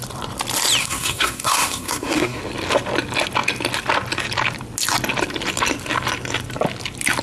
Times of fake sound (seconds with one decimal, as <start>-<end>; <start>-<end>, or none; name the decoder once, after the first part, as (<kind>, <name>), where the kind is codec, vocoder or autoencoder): 0.8-2.4 (codec, SNAC)